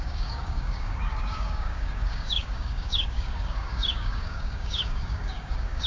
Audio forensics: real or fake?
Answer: fake